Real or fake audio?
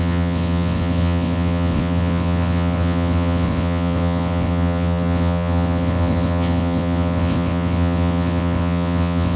fake